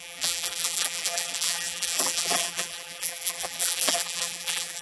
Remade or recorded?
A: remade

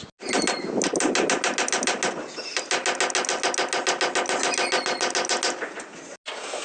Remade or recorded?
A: recorded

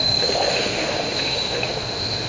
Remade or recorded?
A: remade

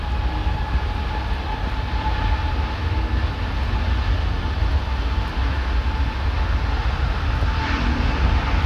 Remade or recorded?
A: recorded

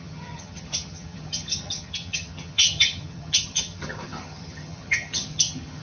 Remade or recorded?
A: remade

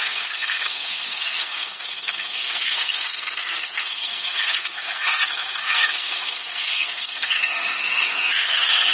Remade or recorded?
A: remade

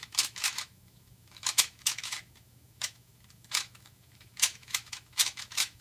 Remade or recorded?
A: remade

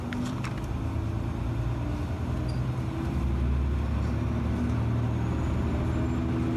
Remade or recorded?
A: recorded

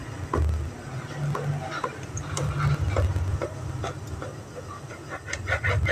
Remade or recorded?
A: recorded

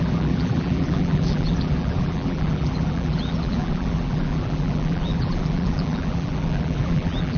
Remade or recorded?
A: remade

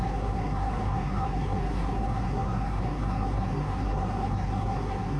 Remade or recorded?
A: remade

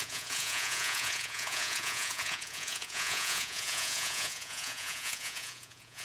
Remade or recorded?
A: remade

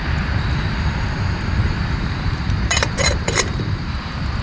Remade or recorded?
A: remade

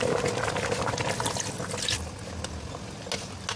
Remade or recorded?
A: recorded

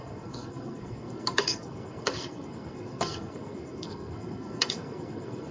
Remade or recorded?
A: remade